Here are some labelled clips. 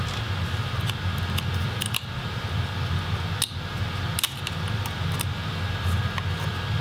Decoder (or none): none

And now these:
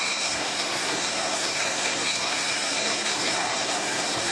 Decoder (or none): codec, SNAC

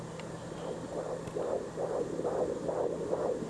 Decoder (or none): none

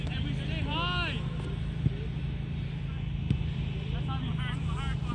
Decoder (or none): none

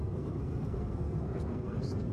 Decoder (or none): codec, SNAC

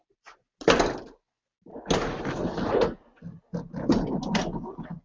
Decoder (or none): none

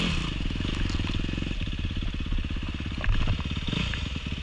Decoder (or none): none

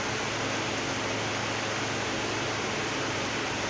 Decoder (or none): none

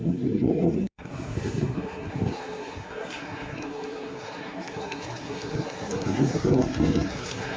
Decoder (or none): codec, SNAC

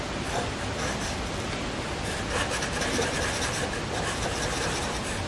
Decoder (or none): none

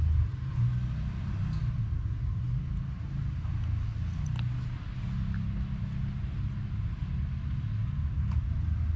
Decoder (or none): none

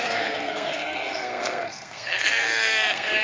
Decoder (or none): codec, SNAC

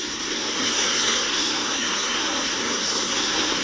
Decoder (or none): codec, SNAC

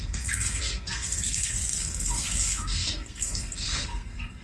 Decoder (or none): codec, SNAC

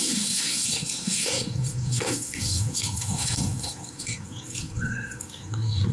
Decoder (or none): codec, SNAC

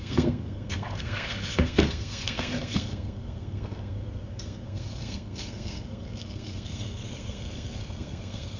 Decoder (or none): codec, SNAC